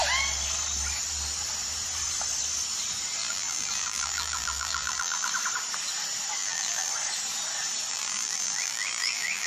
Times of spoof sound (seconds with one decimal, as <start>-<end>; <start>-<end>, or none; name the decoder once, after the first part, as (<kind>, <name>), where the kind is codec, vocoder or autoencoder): 3.2-5.3 (vocoder, BigVGAN v2); 6.4-6.9; 7.9-9.5

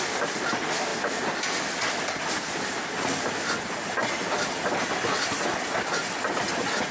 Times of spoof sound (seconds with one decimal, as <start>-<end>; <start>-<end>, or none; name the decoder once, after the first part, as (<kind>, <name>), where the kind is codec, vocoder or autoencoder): none

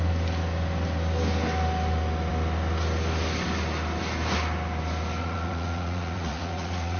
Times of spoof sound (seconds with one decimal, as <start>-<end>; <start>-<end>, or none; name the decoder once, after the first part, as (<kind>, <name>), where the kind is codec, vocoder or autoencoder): 5.2-7.0 (vocoder, Vocos)

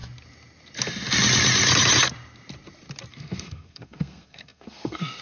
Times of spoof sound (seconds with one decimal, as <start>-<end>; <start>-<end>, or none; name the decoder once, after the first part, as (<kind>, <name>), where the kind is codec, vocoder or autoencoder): 3.1-5.2 (codec, SNAC)

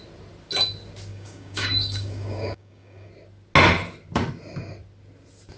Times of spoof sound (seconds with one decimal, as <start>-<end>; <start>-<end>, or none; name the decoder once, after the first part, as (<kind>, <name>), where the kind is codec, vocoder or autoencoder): 1.1-3.1 (codec, DAC)

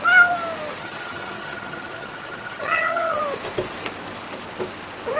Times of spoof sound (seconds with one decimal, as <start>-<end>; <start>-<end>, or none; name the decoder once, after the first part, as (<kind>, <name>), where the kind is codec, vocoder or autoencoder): 0.8-3.2 (vocoder, HiFi-GAN)

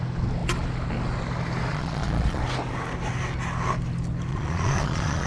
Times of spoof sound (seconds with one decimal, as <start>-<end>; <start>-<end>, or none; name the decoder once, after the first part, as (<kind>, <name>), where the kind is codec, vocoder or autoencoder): 1.7-2.4 (vocoder, Vocos); 4.3-5.3

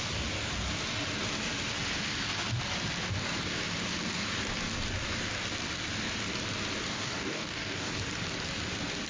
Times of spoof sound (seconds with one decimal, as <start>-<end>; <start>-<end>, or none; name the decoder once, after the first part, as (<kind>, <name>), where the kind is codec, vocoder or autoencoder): 6.9-7.9 (codec, DAC)